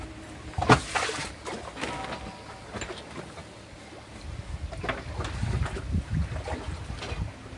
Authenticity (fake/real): real